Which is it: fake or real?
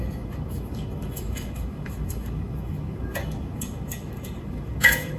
fake